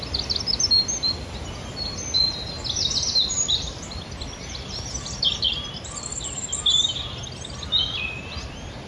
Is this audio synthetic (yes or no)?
no